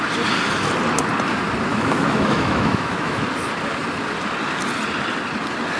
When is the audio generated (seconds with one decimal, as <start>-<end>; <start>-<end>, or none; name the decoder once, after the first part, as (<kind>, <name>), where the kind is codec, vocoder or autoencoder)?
1.7-3.2 (autoencoder, DAC-VAE)